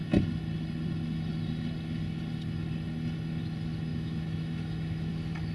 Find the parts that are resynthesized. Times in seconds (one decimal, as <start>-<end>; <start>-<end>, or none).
3.9-5.1

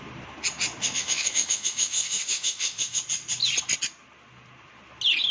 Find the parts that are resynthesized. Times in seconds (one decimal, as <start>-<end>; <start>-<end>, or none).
0.8-3.0

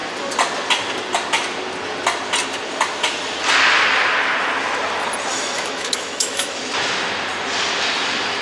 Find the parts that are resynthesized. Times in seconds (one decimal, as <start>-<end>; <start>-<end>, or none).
5.3-6.6

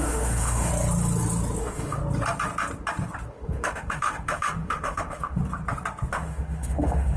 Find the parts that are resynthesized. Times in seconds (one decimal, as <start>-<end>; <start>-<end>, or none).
0.0-0.7; 1.6-2.0; 3.3-5.4; 6.1-7.2

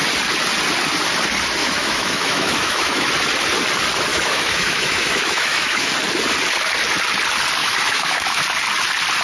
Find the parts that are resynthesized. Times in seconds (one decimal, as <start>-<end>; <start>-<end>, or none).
1.6-3.1; 4.1-5.9; 7.6-8.4

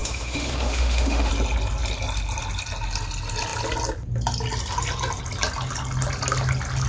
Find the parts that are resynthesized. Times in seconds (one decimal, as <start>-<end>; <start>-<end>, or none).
0.0-1.3

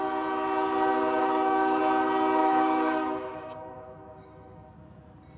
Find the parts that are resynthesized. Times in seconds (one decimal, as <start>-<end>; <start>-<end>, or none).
1.2-1.8; 2.4-5.0